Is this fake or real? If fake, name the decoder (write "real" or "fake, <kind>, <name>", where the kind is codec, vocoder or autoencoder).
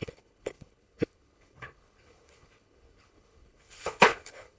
fake, codec, HILCodec